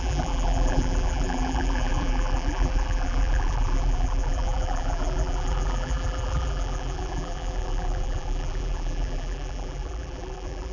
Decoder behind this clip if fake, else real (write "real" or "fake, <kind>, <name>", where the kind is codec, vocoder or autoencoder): fake, vocoder, BigVGAN v2